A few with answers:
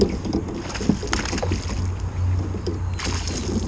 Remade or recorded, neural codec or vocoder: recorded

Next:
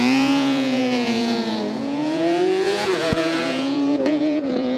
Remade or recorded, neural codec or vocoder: remade, vocoder, Vocos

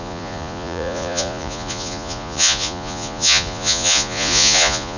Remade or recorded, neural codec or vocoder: remade, vocoder, Vocos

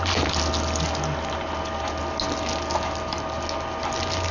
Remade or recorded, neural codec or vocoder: recorded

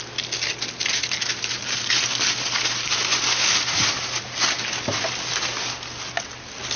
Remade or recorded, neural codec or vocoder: recorded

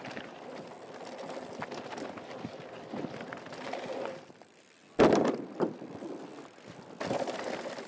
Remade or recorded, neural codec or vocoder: recorded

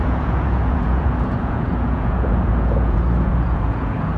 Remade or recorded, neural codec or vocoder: remade, vocoder, Vocos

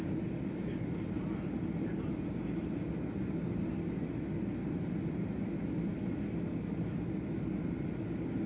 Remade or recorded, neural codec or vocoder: recorded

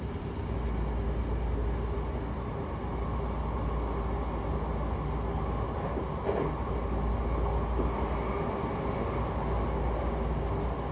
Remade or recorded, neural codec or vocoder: recorded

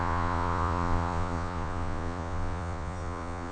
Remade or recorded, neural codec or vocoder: remade, vocoder, Vocos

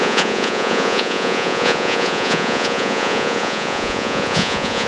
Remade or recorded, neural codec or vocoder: remade, vocoder, Vocos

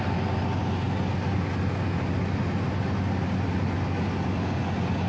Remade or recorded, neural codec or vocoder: recorded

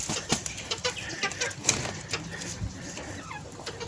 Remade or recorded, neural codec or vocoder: recorded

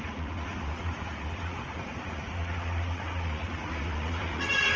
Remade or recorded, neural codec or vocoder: remade, vocoder, Vocos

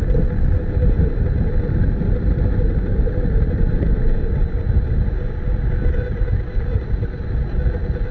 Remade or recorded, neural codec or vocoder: recorded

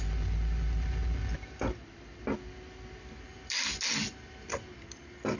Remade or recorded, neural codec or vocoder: recorded